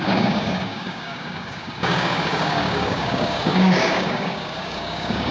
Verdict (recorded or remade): remade